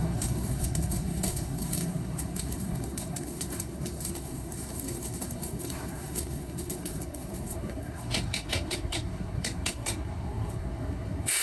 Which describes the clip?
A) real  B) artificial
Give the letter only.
B